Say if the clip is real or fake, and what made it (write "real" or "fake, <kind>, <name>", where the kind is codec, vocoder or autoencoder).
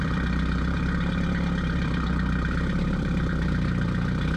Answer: fake, vocoder, BigVGAN v2